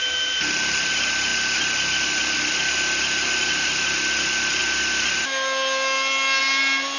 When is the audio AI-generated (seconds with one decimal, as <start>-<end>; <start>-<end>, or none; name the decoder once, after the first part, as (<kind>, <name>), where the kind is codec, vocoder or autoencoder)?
none